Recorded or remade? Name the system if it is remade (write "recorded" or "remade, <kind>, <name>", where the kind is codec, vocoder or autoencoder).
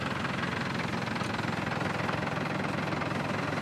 recorded